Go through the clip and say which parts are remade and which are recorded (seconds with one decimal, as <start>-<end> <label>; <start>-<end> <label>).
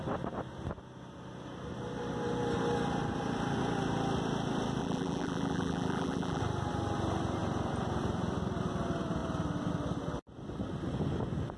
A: 0.0-4.8 recorded; 4.8-6.4 remade; 6.4-11.6 recorded